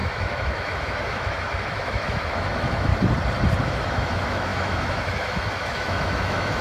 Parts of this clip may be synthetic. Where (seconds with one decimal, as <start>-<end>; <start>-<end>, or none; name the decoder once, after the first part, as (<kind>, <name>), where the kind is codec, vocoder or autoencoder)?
0.0-2.9 (autoencoder, DAC-VAE); 3.6-6.6